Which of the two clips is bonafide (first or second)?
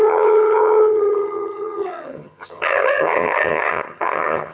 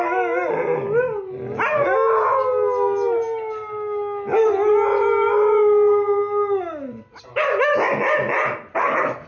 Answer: second